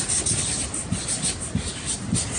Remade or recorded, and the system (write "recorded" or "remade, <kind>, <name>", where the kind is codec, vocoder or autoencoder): recorded